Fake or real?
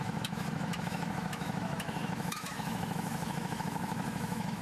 fake